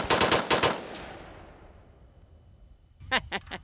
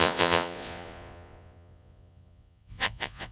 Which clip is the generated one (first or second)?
second